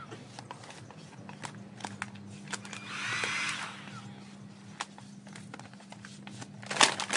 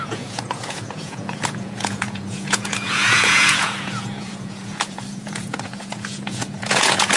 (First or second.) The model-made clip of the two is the second